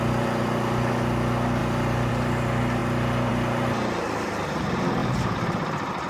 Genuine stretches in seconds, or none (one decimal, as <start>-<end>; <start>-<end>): 0.0-6.1